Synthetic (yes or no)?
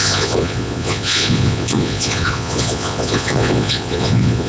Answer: yes